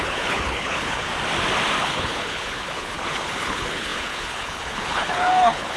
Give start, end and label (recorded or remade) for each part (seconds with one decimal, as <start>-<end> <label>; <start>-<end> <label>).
0.0-1.1 remade; 1.1-1.8 recorded; 1.8-5.8 remade